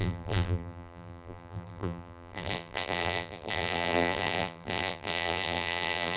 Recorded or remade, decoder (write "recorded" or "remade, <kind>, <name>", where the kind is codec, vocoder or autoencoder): remade, vocoder, BigVGAN v2